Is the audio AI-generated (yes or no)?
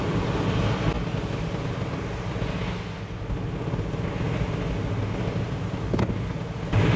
no